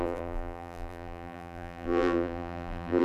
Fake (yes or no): yes